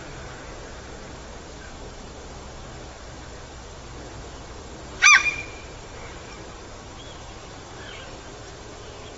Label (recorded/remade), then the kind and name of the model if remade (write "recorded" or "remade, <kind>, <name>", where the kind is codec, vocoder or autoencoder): remade, vocoder, BigVGAN v2